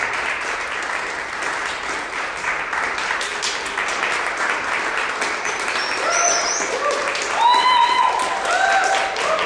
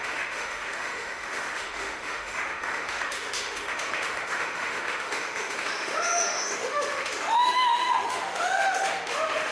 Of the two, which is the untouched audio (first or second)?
first